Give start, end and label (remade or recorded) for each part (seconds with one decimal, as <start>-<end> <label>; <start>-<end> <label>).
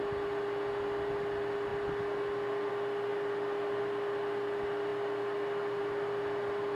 0.0-6.7 recorded